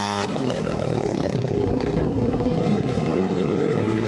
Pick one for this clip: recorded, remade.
remade